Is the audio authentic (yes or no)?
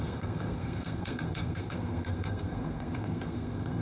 no